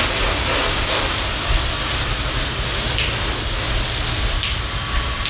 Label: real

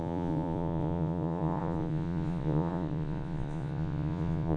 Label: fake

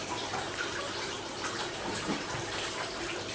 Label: fake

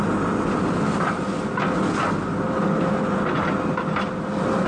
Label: real